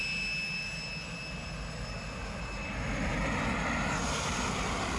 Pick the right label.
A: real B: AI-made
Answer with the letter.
A